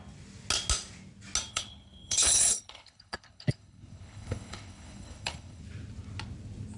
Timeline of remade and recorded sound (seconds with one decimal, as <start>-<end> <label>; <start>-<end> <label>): 0.0-1.5 recorded; 1.5-5.6 remade; 5.6-6.8 recorded